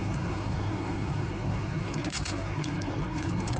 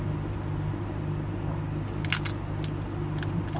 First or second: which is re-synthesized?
first